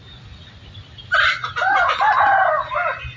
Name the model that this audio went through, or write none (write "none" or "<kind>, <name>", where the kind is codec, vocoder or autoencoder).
none